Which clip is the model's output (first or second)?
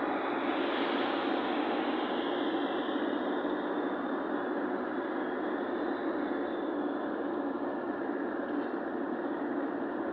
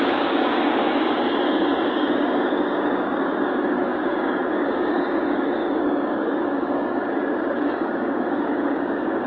second